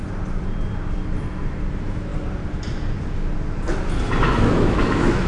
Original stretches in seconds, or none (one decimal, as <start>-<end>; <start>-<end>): 0.0-1.7; 2.1-4.2